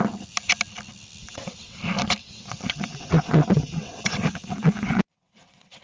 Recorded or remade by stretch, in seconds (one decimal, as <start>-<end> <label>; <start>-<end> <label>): 0.0-1.2 recorded; 1.2-1.8 remade; 1.8-2.2 recorded; 2.2-5.8 remade